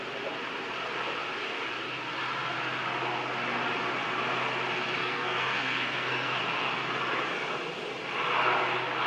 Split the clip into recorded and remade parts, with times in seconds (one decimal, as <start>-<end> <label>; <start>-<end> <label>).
0.0-5.0 recorded; 5.0-6.4 remade; 6.4-9.1 recorded